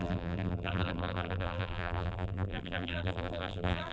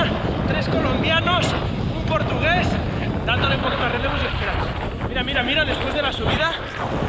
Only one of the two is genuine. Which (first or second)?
second